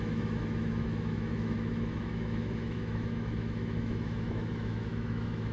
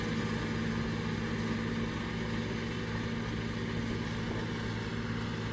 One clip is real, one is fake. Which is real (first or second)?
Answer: second